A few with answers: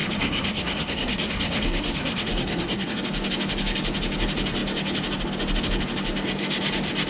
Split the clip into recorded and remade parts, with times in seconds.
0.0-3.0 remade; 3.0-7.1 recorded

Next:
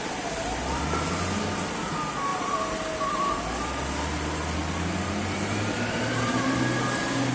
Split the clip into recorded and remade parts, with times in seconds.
0.0-7.3 recorded

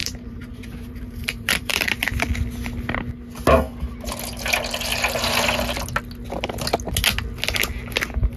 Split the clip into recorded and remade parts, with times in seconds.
0.0-1.9 remade; 1.9-8.4 recorded

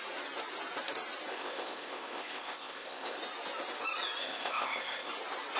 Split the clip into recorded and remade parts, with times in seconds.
0.0-1.3 recorded; 1.3-3.2 remade; 3.2-4.2 recorded; 4.2-5.1 remade; 5.1-5.6 recorded

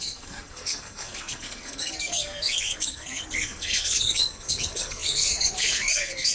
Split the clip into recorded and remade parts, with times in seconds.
0.0-6.3 remade